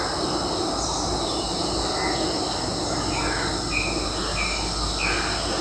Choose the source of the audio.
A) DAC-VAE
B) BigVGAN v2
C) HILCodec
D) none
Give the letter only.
D